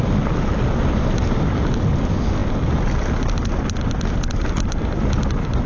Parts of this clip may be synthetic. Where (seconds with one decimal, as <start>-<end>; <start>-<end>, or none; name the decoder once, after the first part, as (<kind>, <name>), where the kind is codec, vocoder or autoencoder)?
none